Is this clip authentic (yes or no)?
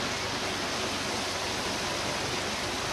yes